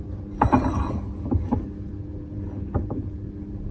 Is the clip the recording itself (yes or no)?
yes